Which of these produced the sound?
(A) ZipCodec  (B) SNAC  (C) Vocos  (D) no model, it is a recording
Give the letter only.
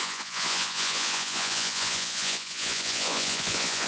C